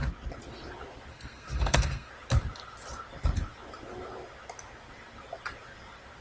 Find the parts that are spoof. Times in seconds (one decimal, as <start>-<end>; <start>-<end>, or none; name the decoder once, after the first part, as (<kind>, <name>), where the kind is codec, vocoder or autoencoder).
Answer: 1.1-2.1 (codec, SNAC)